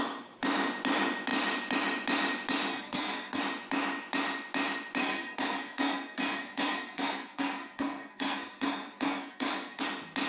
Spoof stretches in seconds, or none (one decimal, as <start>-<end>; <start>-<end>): 2.7-3.4; 5.0-9.8